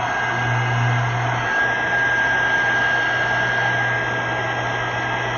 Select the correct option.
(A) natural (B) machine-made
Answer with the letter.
A